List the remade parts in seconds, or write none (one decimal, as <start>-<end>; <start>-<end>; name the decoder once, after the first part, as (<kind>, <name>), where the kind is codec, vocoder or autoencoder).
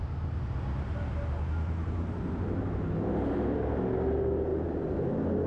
4.5-5.0 (vocoder, BigVGAN v2)